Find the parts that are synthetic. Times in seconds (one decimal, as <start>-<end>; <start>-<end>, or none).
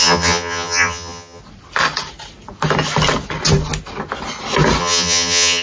0.0-1.4; 4.8-5.6